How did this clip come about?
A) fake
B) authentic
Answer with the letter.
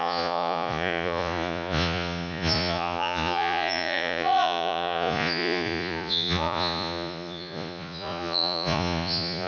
A